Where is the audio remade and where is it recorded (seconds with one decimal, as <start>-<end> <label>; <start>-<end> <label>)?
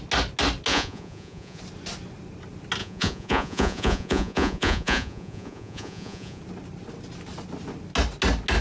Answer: 0.0-0.7 recorded; 0.7-1.6 remade; 1.6-2.8 recorded; 2.8-6.4 remade; 6.4-8.6 recorded